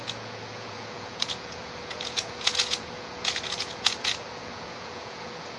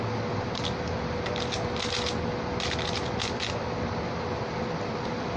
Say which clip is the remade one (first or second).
first